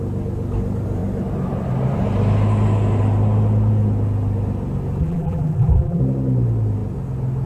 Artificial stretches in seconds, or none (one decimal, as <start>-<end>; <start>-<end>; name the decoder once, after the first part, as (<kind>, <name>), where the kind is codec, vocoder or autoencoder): 5.0-6.0 (vocoder, BigVGAN v2)